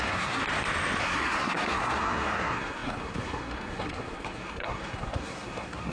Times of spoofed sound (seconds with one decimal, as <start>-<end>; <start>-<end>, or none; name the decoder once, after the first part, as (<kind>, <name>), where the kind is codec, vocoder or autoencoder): 0.0-0.4 (codec, SNAC); 1.0-5.9